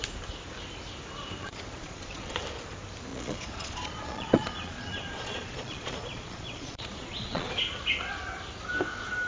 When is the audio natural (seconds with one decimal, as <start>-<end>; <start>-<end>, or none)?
0.0-1.4; 2.4-3.1; 7.5-9.3